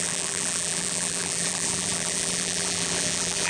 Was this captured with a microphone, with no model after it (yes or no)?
no